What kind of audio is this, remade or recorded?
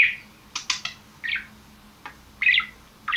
recorded